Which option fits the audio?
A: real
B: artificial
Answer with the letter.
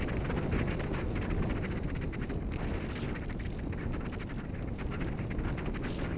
A